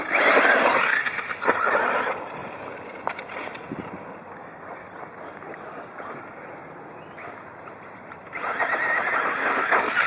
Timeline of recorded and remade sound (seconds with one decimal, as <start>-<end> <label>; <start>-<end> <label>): 0.0-6.6 remade; 6.6-7.7 recorded; 7.7-9.1 remade; 9.1-10.1 recorded